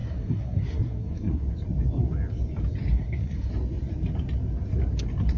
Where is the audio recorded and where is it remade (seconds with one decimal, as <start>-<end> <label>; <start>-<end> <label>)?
0.0-1.4 remade; 1.4-2.9 recorded; 2.9-3.5 remade; 3.5-5.4 recorded

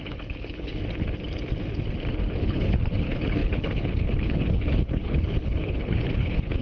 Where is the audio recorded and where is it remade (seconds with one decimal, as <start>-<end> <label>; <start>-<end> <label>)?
0.0-0.8 remade; 0.8-2.4 recorded; 2.4-6.6 remade

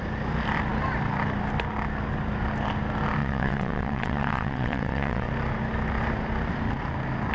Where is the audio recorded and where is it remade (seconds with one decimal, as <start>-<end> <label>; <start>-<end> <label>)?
0.0-3.2 recorded; 3.2-5.3 remade; 5.3-7.3 recorded

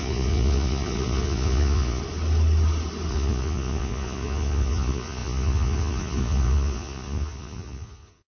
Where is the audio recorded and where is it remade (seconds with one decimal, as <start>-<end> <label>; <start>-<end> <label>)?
0.0-2.0 remade; 2.0-3.1 recorded; 3.1-8.3 remade

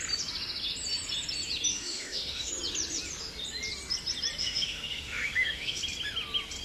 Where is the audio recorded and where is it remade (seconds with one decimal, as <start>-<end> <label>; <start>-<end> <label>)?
0.0-1.7 recorded; 1.7-2.5 remade; 2.5-4.4 recorded; 4.4-5.8 remade; 5.8-6.6 recorded

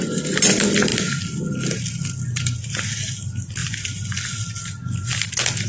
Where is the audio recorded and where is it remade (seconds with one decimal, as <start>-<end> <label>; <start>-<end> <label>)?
0.0-5.7 recorded

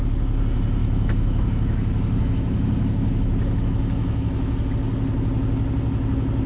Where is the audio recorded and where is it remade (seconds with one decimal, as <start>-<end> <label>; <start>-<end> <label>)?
0.0-0.8 recorded; 0.8-4.7 remade; 4.7-6.5 recorded

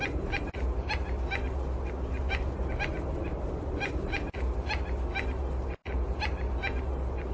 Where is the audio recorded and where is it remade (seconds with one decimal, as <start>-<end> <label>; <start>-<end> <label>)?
0.0-7.3 recorded